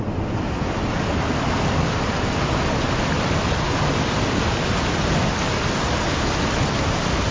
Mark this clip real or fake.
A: real